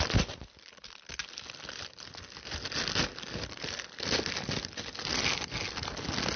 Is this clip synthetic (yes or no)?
no